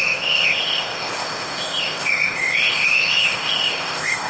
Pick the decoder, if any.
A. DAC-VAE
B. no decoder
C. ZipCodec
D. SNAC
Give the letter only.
C